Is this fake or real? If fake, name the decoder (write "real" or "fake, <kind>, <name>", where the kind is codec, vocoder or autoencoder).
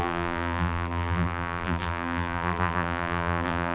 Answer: fake, vocoder, BigVGAN v2